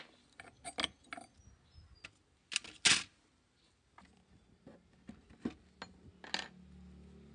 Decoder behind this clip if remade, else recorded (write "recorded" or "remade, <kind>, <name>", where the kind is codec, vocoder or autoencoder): recorded